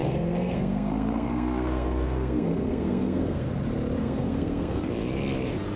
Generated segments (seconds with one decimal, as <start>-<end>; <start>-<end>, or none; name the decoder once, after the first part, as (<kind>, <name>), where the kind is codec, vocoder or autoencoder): 0.0-3.5 (codec, SNAC); 4.0-4.9